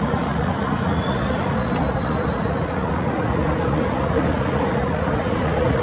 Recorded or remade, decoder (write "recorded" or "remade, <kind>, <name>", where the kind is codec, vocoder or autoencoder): remade, vocoder, Vocos